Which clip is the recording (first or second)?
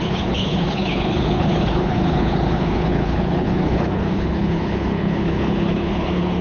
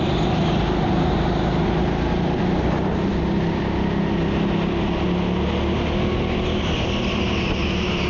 second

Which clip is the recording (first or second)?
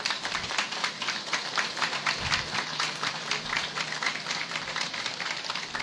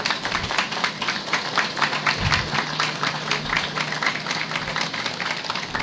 second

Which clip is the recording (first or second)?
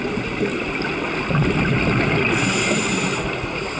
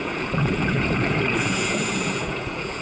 first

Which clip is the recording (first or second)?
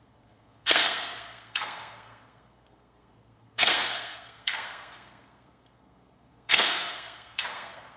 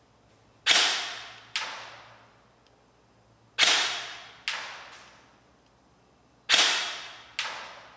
second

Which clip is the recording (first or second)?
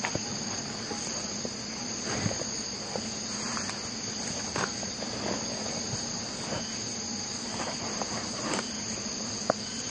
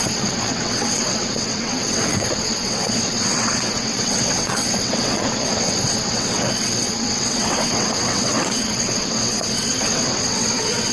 first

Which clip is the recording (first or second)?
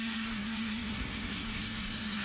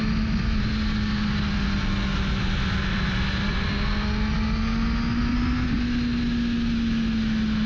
second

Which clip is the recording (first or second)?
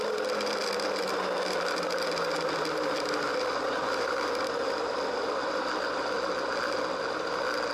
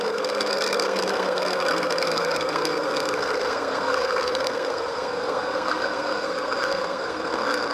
first